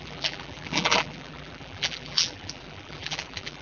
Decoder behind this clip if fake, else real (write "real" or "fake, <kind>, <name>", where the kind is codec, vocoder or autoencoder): fake, vocoder, BigVGAN v2